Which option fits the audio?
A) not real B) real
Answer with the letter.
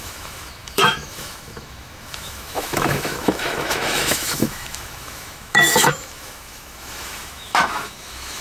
A